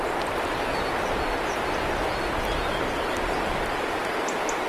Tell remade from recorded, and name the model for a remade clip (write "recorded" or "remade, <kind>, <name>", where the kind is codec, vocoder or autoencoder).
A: recorded